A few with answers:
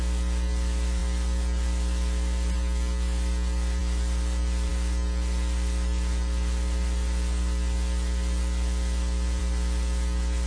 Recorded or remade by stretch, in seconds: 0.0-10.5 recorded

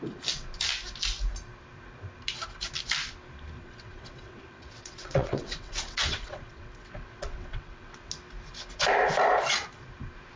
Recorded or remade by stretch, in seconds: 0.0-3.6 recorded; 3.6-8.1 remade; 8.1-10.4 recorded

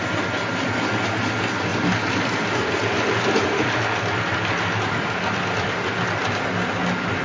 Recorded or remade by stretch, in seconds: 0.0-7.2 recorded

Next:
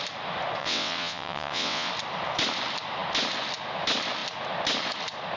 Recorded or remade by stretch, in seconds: 0.0-0.6 recorded; 0.6-1.9 remade; 1.9-5.4 recorded